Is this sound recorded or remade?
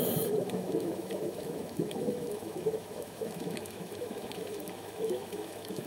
remade